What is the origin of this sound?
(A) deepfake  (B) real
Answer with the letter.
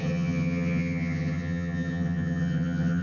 A